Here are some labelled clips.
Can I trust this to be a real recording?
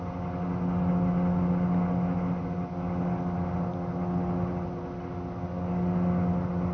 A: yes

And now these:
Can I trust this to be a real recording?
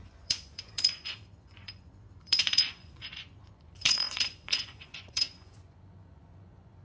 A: no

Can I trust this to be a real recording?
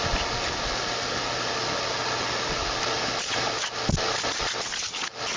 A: yes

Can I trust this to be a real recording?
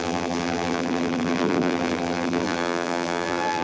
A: no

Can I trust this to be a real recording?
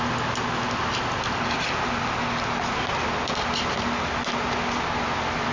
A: yes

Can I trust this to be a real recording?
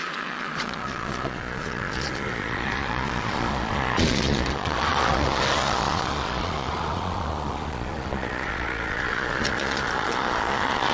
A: no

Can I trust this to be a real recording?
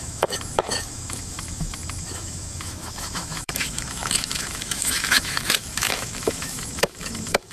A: no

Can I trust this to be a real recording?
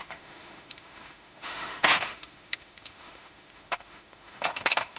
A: no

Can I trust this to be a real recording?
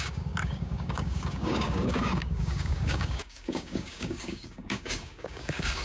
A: no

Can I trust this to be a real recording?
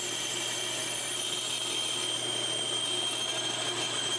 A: yes